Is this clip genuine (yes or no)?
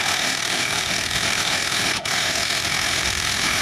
no